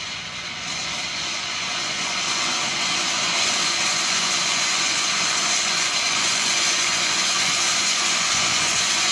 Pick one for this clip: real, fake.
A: fake